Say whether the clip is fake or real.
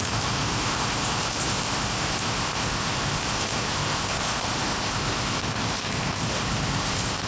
fake